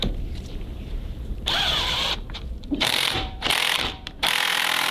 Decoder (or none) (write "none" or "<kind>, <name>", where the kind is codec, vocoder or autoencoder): vocoder, BigVGAN v2